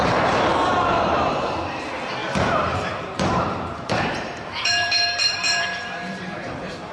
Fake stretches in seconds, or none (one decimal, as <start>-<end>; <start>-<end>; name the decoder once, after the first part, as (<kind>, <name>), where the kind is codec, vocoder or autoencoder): 0.0-6.9 (vocoder, BigVGAN v2)